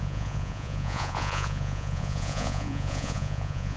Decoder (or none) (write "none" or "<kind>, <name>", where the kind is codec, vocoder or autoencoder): vocoder, Vocos